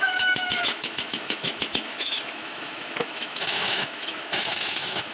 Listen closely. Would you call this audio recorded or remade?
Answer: remade